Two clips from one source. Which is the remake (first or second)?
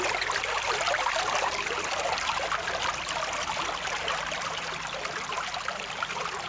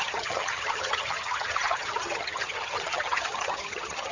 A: second